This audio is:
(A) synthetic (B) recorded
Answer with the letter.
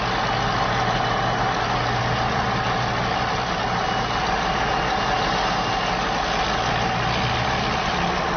B